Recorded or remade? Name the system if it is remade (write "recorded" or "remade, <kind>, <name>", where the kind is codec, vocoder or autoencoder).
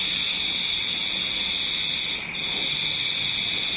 recorded